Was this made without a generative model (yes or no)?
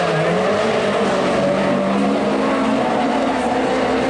yes